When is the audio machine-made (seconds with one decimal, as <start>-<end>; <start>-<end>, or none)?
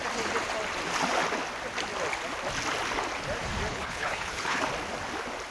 3.7-4.6